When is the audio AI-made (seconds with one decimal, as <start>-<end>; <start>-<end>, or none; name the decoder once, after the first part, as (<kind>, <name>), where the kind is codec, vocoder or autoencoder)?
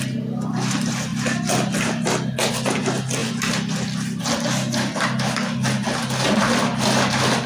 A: none